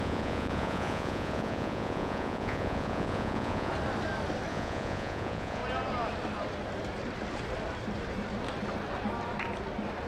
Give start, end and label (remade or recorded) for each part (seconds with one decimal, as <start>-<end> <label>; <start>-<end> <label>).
0.0-3.7 remade; 3.7-4.5 recorded; 4.5-5.6 remade; 5.6-10.1 recorded